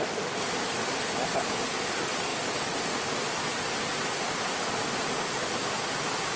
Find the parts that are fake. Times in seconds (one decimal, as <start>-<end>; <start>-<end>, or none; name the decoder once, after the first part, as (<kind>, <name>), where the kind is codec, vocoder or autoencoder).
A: none